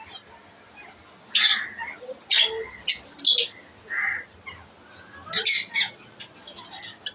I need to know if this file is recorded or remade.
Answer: recorded